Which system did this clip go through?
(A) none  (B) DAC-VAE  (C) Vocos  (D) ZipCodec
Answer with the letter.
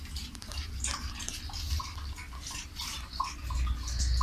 A